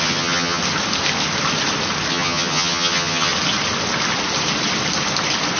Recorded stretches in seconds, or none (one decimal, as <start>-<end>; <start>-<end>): 0.6-2.1; 3.3-5.6

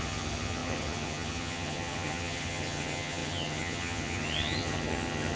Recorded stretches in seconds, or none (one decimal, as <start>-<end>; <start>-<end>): none

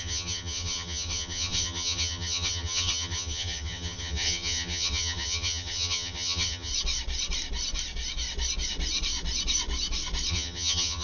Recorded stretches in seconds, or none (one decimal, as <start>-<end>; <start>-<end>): 6.7-10.3

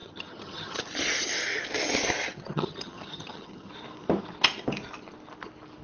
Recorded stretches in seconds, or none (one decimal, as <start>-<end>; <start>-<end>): 0.8-2.2; 3.7-5.8

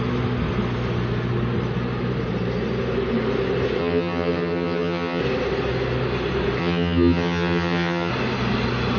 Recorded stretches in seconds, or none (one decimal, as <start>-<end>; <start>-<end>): 0.0-3.8; 5.2-6.6; 8.1-9.0

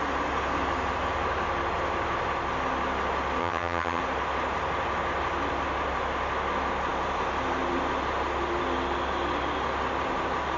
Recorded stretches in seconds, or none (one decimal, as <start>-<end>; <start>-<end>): 0.0-3.4; 4.0-10.6

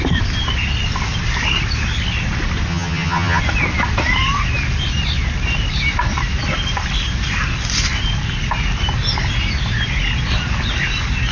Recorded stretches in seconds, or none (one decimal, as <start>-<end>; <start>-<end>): 0.0-2.7; 3.4-11.3

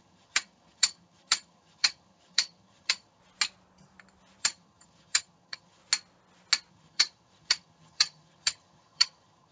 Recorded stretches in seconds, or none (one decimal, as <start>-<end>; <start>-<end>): 3.2-4.4; 5.8-6.7